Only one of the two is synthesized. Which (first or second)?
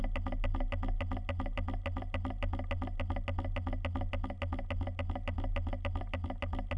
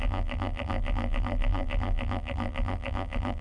second